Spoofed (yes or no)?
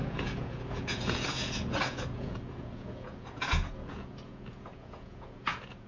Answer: yes